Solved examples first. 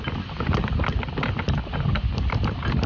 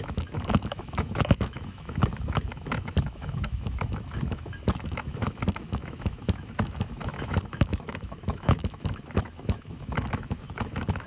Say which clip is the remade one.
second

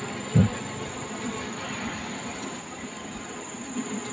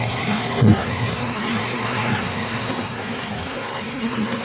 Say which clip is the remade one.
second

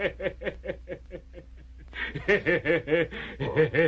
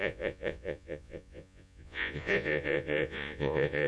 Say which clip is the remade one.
second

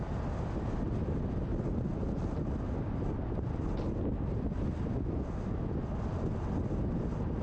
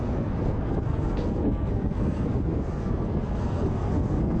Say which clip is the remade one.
second